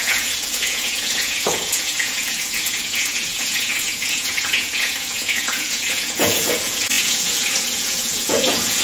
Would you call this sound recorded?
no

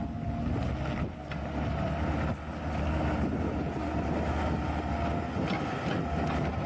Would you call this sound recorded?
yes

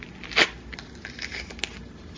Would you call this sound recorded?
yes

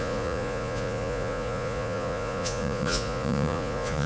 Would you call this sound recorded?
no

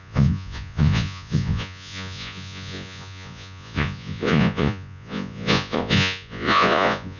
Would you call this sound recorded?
no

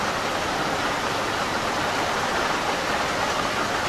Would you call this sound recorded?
yes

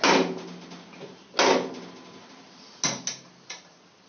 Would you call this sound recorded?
yes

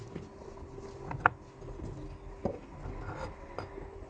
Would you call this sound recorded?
yes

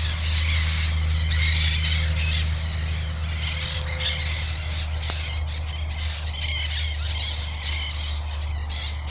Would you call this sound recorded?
yes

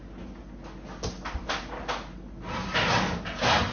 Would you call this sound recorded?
yes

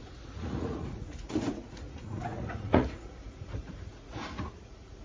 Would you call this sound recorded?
no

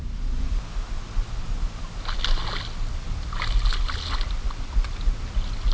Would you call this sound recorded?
yes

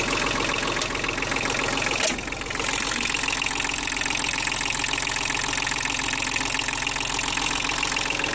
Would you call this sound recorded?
yes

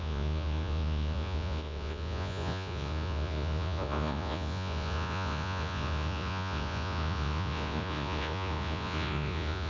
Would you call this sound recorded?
no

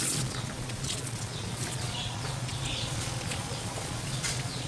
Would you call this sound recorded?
no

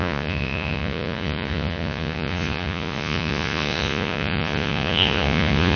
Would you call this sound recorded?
no